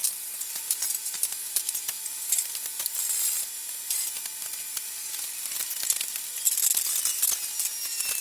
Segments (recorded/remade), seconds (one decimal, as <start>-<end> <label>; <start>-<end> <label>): 0.0-0.6 remade; 0.6-8.2 recorded